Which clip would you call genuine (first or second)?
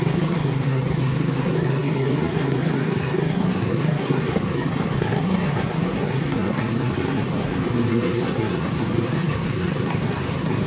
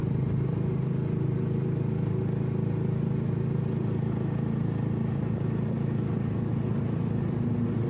second